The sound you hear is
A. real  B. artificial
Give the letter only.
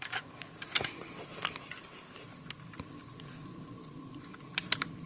A